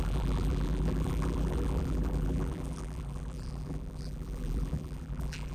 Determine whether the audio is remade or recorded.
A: remade